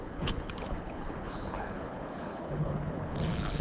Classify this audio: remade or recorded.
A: remade